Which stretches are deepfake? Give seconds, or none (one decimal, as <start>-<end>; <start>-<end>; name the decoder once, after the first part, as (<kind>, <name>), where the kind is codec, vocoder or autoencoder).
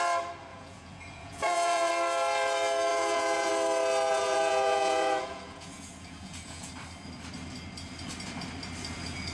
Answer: 0.5-1.9 (vocoder, Vocos); 2.9-3.5; 4.1-6.7